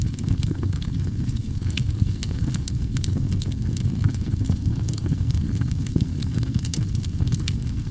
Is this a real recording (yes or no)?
no